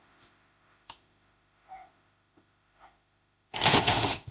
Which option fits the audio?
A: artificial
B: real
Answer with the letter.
A